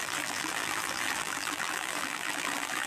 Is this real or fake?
fake